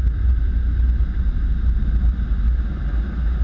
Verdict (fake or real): real